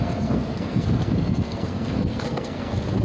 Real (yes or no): no